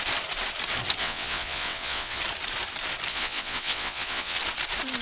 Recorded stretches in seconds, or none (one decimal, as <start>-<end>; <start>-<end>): 0.0-1.0; 2.2-3.1; 4.4-5.0